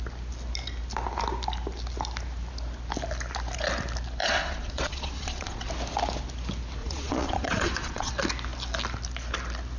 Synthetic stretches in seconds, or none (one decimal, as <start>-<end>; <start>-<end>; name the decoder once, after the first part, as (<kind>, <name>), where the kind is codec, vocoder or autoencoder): 4.2-5.7 (vocoder, Vocos); 6.8-8.1